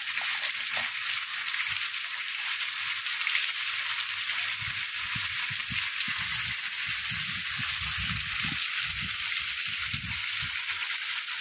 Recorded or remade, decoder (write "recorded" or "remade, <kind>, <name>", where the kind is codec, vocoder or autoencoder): recorded